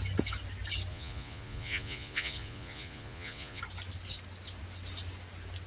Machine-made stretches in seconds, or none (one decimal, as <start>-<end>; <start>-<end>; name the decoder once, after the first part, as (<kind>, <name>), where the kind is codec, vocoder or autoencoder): 0.9-3.6 (vocoder, Vocos)